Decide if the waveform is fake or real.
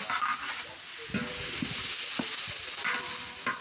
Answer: real